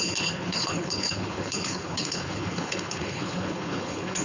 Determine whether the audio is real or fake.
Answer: fake